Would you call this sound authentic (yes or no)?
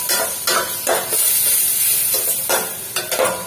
yes